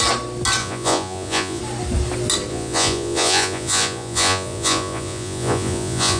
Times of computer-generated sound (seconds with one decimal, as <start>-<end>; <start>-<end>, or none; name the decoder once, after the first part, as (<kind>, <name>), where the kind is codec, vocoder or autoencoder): 0.6-1.6 (vocoder, Vocos); 2.5-6.2